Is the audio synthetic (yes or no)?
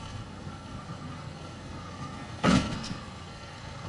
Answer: yes